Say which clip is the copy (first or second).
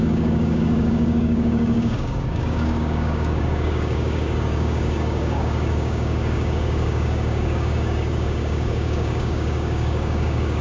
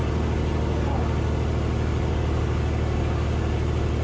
first